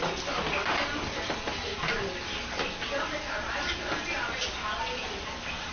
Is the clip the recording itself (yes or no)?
yes